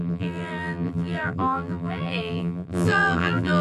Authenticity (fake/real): fake